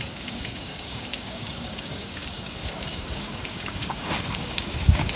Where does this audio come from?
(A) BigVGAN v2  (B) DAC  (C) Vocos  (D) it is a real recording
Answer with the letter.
B